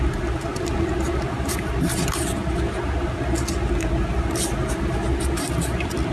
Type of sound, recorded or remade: recorded